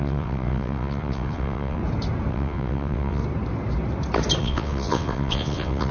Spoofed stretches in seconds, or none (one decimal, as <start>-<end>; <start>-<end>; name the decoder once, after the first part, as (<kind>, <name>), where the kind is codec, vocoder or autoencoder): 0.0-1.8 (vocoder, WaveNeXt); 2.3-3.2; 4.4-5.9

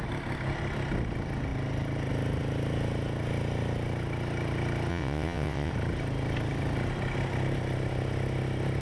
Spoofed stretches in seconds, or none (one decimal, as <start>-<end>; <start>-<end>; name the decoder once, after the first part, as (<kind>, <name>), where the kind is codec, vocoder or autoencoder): 4.9-5.7 (vocoder, WaveNeXt)

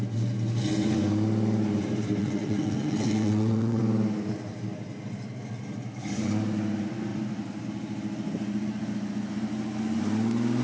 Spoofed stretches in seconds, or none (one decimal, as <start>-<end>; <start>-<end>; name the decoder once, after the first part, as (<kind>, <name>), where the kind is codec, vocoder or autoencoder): 2.2-3.8 (vocoder, WaveNeXt)

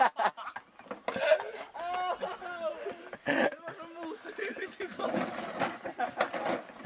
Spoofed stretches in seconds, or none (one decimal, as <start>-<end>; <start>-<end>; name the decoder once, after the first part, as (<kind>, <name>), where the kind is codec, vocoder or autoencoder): none

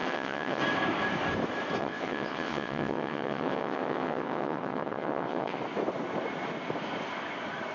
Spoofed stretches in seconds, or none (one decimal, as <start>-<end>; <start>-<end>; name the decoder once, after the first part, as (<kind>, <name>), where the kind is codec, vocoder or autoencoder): 0.0-0.6 (vocoder, WaveNeXt); 1.8-5.6